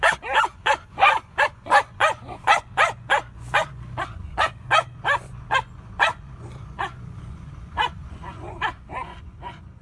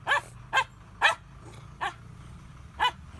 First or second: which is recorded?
second